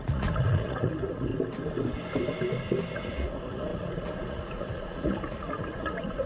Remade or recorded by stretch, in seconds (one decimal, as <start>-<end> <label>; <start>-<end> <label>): 0.0-1.3 remade; 1.3-2.9 recorded; 2.9-6.3 remade